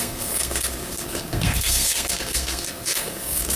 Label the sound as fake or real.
fake